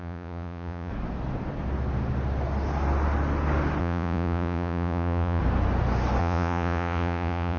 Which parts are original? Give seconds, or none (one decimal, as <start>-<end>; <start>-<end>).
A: 0.9-3.8; 5.4-6.2